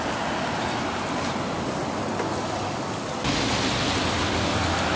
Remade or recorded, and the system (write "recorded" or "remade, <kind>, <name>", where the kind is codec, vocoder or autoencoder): recorded